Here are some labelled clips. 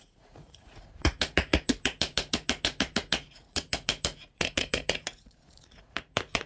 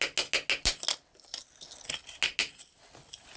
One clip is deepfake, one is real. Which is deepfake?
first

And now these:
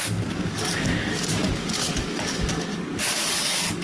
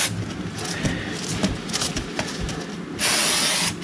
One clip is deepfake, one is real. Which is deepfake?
first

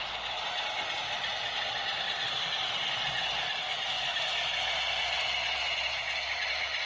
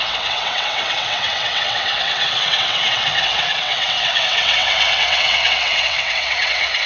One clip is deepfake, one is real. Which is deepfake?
second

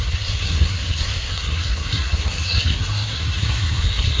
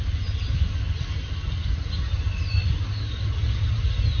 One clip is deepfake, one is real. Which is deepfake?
first